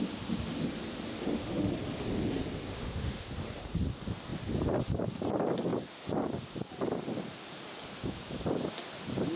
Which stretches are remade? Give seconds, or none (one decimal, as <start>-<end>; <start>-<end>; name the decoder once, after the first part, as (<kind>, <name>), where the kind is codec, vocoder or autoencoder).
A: 1.1-1.7 (autoencoder, DAC-VAE); 2.7-3.3

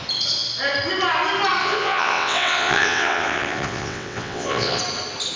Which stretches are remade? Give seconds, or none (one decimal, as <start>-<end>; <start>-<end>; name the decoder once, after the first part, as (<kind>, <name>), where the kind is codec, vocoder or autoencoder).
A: 1.6-4.8 (vocoder, WaveNeXt)